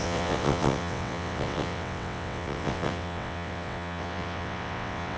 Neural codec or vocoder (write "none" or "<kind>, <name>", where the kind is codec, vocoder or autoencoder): vocoder, WaveNeXt